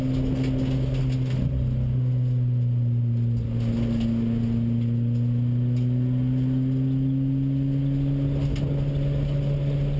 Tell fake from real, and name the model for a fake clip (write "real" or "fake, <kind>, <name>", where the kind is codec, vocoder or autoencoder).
real